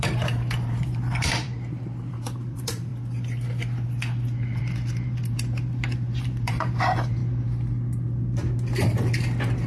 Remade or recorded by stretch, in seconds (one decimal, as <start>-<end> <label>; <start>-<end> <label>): 0.0-1.5 remade; 1.5-2.1 recorded; 2.1-2.9 remade; 2.9-4.6 recorded; 4.6-7.2 remade; 7.2-9.7 recorded